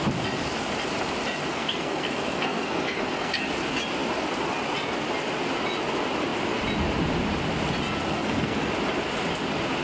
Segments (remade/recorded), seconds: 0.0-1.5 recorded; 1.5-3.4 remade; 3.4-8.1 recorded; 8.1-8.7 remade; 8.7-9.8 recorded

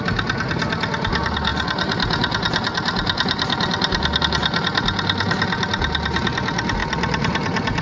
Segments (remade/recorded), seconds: 0.0-7.8 recorded

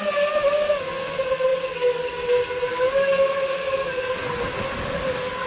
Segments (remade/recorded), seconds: 0.0-5.5 recorded

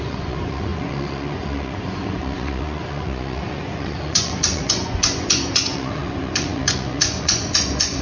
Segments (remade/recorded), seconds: 0.0-8.0 remade

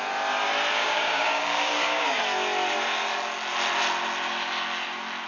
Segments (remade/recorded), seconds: 0.0-0.8 recorded; 0.8-2.2 remade; 2.2-5.3 recorded

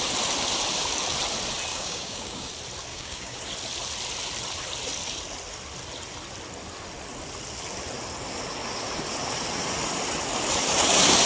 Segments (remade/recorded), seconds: 0.0-1.7 recorded; 1.7-2.5 remade; 2.5-2.9 recorded; 2.9-3.4 remade; 3.4-11.2 recorded

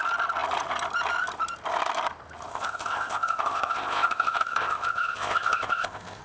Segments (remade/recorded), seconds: 0.0-2.5 recorded; 2.5-6.2 remade